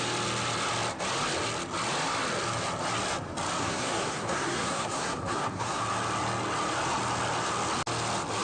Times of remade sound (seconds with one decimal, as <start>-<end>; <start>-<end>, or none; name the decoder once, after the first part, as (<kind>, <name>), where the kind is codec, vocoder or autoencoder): 3.6-5.8 (codec, SNAC)